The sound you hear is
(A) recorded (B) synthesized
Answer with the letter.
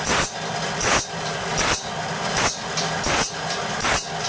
A